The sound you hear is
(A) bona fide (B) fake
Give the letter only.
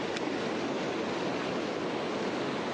A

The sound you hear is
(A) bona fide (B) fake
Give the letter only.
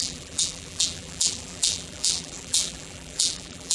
B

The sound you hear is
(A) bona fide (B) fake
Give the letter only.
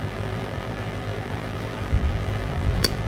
B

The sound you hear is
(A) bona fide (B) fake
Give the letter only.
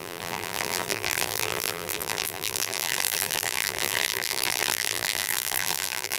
B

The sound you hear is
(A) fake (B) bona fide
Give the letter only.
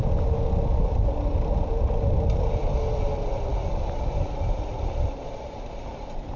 B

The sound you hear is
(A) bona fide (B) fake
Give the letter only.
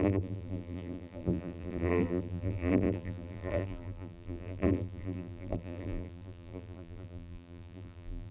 B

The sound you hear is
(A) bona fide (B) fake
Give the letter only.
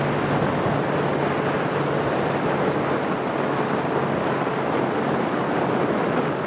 A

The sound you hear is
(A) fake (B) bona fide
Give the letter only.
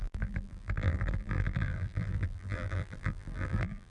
A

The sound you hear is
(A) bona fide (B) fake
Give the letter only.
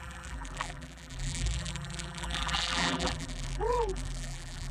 B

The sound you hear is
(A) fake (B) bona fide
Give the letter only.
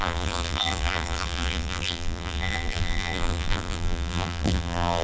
A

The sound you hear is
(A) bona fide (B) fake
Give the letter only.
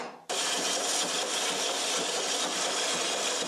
A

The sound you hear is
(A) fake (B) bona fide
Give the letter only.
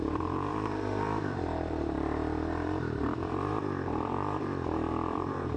A